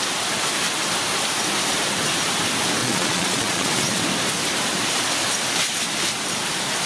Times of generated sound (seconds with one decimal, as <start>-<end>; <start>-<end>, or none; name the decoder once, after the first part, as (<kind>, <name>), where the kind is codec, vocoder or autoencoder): 2.8-4.0 (vocoder, Vocos)